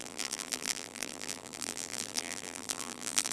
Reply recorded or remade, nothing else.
remade